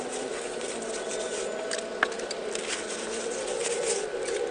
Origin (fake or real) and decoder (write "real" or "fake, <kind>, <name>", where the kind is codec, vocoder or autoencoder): real